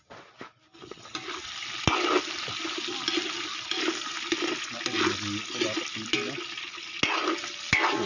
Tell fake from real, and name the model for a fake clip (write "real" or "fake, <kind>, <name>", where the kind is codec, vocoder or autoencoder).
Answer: real